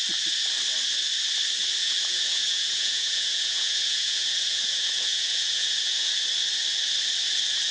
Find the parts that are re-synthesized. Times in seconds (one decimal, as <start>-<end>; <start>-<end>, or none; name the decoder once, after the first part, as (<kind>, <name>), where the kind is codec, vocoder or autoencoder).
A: 1.8-6.1 (vocoder, Vocos)